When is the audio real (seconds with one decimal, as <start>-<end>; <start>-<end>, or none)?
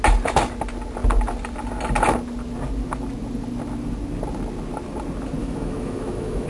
0.0-5.4